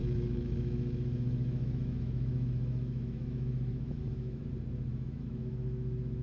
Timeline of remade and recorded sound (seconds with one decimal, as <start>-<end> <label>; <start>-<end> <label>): 0.0-4.4 remade; 4.4-4.9 recorded; 4.9-6.2 remade